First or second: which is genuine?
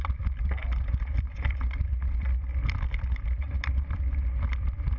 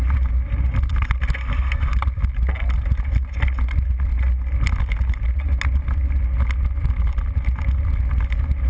second